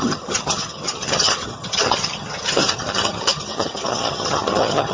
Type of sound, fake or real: fake